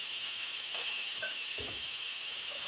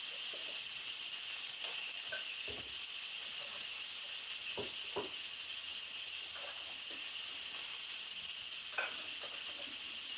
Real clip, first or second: second